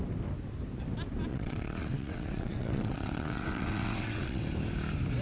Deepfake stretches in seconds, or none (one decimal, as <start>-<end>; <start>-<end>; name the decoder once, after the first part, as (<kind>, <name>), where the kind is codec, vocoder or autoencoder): 1.3-4.4 (vocoder, WaveNeXt)